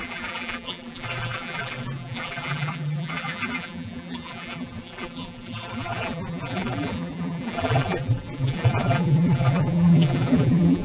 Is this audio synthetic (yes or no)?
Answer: yes